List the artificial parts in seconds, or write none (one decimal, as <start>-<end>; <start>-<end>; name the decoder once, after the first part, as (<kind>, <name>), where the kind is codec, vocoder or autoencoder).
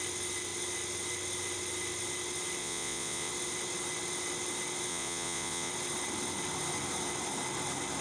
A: 2.6-3.3 (vocoder, Vocos); 4.9-5.7